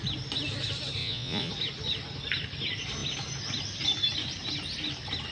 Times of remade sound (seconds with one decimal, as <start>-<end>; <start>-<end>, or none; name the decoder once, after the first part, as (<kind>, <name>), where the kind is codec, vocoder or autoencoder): 1.0-1.5 (vocoder, Vocos)